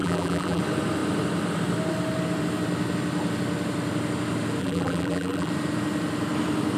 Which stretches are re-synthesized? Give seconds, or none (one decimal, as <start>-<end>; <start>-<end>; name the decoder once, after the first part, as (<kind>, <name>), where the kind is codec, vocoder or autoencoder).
0.0-0.6 (vocoder, BigVGAN v2); 4.6-5.5